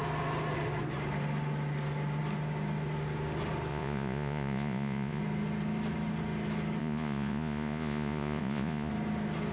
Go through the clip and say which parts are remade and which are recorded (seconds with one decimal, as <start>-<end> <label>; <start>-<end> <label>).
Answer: 0.0-3.7 recorded; 3.7-5.2 remade; 5.2-6.8 recorded; 6.8-8.9 remade; 8.9-9.5 recorded